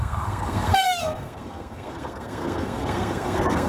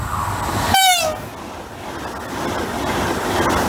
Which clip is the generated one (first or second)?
first